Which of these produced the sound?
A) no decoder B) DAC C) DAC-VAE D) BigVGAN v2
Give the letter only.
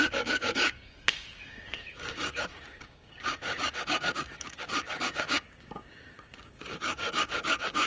B